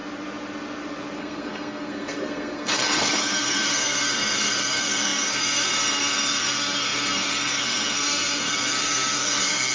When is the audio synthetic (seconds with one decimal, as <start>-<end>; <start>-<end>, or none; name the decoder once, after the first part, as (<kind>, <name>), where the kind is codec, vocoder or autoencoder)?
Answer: 1.2-9.7 (codec, SNAC)